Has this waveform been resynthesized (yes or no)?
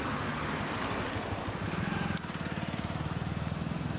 no